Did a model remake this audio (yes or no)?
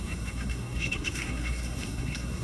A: yes